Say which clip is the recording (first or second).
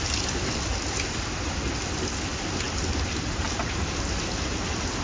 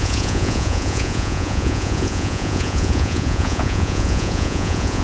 first